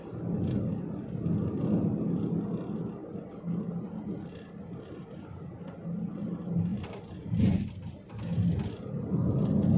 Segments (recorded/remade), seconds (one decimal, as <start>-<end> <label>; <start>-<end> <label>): 0.0-9.8 recorded